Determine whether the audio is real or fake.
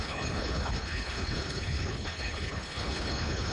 fake